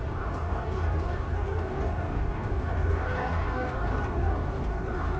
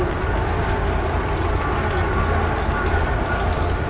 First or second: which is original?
second